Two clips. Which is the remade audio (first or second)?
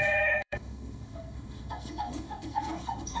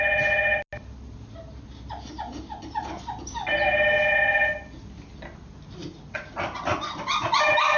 first